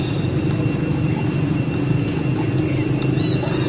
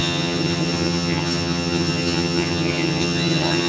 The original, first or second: first